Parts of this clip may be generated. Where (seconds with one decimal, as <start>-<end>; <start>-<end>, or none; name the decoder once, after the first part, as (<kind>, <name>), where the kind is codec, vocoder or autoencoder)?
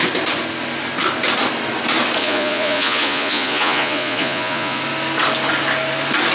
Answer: 2.2-4.8 (vocoder, Vocos)